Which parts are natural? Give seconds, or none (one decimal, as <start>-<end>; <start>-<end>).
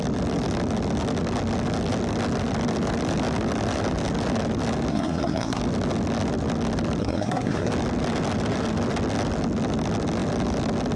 0.0-4.9; 5.6-7.0; 7.7-11.0